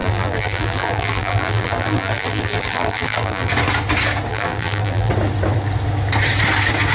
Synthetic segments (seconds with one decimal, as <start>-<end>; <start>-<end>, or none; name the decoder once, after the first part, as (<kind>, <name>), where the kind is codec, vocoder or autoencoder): 0.0-3.5 (vocoder, BigVGAN v2); 4.3-5.1

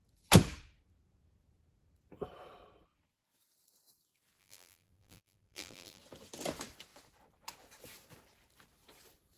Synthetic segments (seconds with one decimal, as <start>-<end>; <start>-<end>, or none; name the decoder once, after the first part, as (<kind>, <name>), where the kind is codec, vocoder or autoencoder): 4.4-6.0 (vocoder, BigVGAN v2)

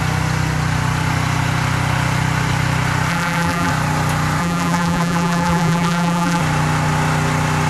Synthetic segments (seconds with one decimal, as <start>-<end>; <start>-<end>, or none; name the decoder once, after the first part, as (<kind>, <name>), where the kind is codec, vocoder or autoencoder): 3.1-3.7 (vocoder, BigVGAN v2); 4.4-6.4

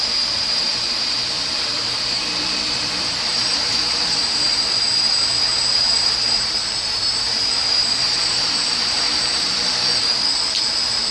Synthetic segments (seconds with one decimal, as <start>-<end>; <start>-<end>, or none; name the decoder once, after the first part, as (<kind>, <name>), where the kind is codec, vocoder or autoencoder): 0.0-9.8 (vocoder, BigVGAN v2); 10.6-11.1

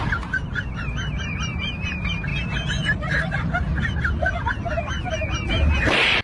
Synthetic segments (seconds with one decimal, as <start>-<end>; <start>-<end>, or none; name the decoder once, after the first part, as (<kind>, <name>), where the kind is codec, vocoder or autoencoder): 0.0-2.3 (vocoder, BigVGAN v2); 5.5-6.2

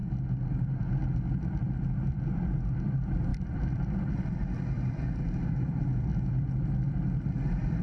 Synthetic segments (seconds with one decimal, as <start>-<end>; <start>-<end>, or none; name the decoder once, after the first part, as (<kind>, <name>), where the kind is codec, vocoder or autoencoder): 1.3-5.4 (vocoder, BigVGAN v2); 6.3-7.8

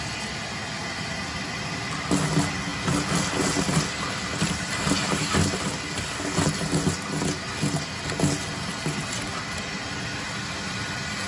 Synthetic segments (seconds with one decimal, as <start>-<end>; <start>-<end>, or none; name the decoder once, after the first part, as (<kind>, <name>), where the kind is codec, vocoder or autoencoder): 2.7-5.4 (vocoder, BigVGAN v2)

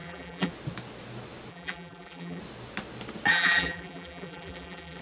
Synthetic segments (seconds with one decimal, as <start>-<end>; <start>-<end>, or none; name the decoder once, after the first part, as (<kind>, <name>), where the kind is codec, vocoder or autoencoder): 0.0-0.5 (vocoder, BigVGAN v2); 1.5-2.4; 3.3-5.0